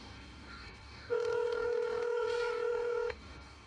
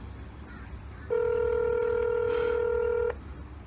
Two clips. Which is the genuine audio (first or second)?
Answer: second